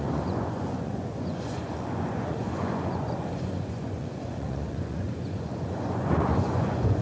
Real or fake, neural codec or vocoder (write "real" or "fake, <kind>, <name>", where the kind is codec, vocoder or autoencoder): fake, vocoder, Vocos